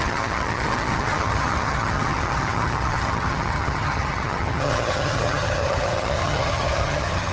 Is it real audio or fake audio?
fake